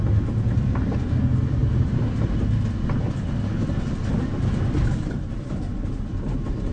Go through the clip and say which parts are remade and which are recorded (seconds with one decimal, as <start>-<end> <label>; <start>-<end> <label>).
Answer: 0.0-1.6 recorded; 1.6-2.4 remade; 2.4-6.7 recorded